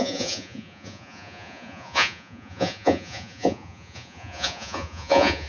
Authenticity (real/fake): fake